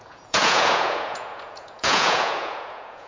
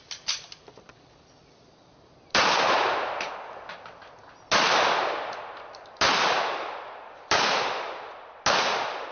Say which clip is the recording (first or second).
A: second